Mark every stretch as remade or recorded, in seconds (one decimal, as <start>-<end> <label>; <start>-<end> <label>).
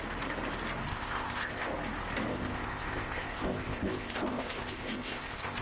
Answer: 0.0-0.9 recorded; 0.9-1.7 remade; 1.7-2.3 recorded; 2.3-5.6 remade